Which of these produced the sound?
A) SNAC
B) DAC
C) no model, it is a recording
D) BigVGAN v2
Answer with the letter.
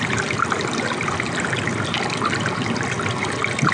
C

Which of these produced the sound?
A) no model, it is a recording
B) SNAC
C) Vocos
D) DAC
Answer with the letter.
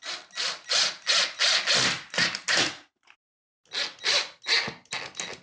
A